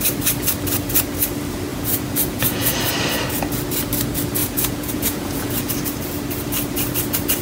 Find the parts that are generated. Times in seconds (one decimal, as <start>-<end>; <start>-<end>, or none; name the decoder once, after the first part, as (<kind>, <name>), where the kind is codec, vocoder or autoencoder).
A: 1.7-2.8 (vocoder, Vocos); 4.4-5.7